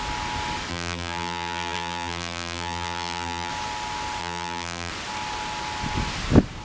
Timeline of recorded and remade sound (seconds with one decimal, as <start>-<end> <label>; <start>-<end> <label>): 0.0-0.7 recorded; 0.7-3.5 remade; 3.5-4.2 recorded; 4.2-4.9 remade; 4.9-6.6 recorded